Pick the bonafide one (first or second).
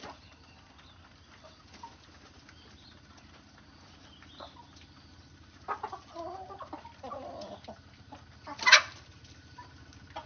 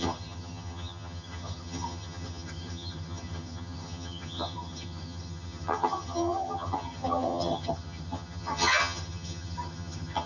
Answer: first